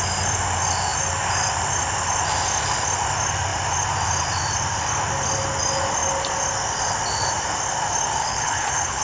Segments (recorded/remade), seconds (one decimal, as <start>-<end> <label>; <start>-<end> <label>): 0.0-8.2 recorded; 8.2-9.0 remade